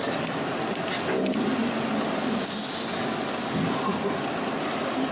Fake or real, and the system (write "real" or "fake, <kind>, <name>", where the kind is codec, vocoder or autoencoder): real